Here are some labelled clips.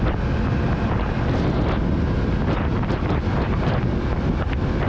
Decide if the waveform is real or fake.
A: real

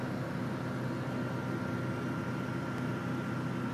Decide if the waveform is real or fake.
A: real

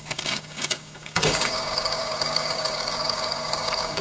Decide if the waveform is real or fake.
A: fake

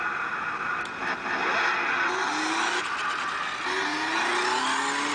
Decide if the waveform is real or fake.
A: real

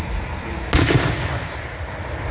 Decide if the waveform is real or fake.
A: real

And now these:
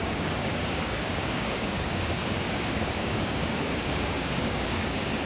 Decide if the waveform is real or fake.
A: fake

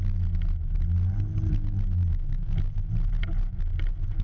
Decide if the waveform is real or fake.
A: real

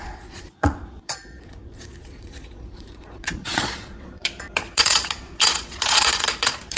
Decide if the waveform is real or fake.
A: fake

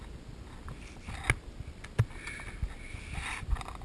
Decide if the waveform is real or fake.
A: real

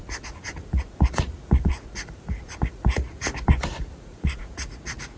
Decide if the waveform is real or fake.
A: fake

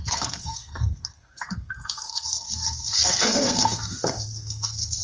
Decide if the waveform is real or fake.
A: fake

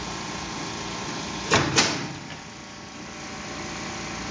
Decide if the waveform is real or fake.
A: real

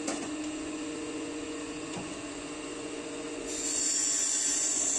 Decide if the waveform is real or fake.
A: fake